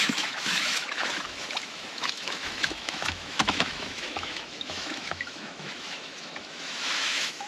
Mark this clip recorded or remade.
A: remade